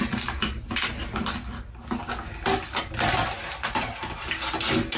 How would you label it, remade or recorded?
recorded